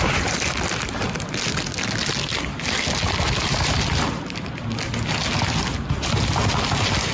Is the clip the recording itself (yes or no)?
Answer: yes